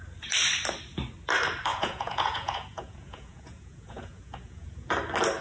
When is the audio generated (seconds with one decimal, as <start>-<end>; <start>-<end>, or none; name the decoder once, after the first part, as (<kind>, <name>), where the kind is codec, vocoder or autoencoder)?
1.7-4.9 (vocoder, Vocos)